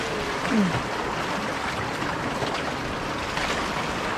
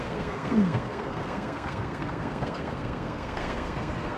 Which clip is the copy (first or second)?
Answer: second